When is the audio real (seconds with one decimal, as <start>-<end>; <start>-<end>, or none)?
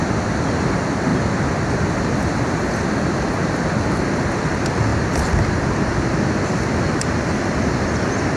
0.0-8.4